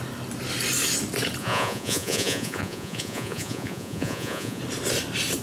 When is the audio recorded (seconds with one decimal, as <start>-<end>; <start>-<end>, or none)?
0.0-1.4; 4.6-5.4